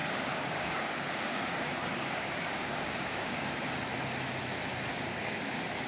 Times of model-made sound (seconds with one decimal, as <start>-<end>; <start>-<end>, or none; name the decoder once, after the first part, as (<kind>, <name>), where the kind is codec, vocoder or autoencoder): 0.0-3.5 (codec, DAC); 4.9-5.5